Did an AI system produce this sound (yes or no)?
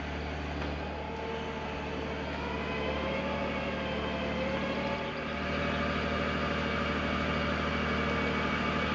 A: no